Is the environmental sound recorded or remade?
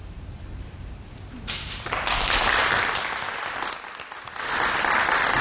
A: recorded